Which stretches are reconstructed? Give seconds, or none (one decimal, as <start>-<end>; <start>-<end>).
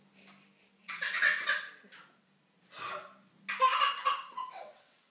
0.8-1.7; 4.0-5.1